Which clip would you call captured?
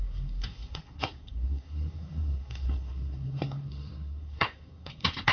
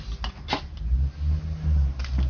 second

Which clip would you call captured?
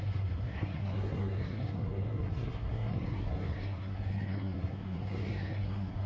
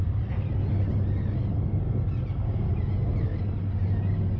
second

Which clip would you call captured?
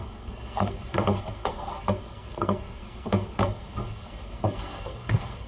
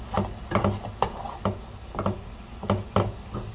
second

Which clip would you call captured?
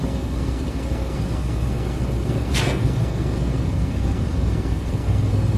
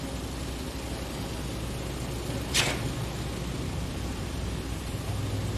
second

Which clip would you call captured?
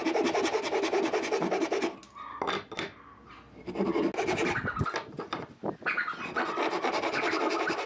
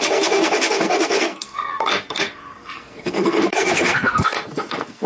first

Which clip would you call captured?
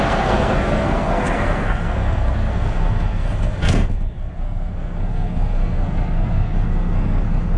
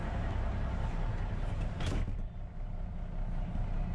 second